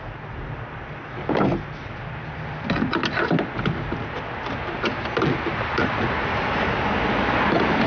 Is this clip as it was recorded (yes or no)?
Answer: yes